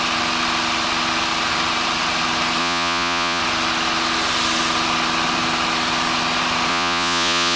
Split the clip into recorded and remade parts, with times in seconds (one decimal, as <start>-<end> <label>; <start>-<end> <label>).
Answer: 0.0-2.6 recorded; 2.6-3.4 remade; 3.4-6.7 recorded; 6.7-7.6 remade